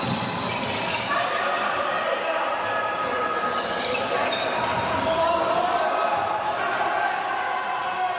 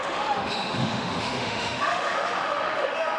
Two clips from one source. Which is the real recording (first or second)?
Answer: first